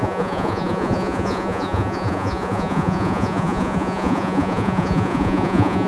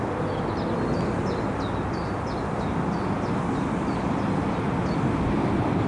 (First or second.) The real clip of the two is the second